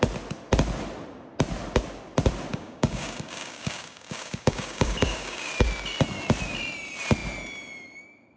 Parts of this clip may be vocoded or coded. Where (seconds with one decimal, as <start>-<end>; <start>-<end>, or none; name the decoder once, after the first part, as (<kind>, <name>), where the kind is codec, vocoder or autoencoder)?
2.5-5.5 (codec, DAC)